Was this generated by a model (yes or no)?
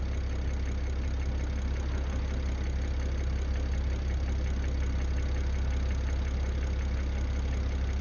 no